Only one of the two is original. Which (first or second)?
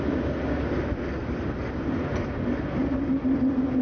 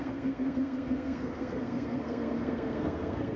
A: first